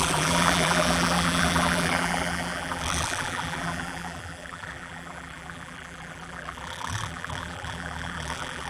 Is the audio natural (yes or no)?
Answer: no